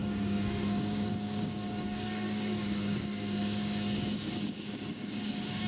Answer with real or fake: fake